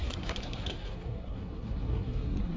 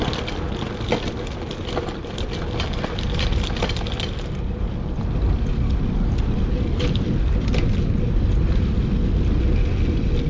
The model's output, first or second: first